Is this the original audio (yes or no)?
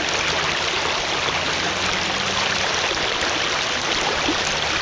yes